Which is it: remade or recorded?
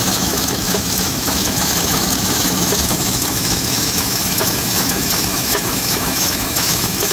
remade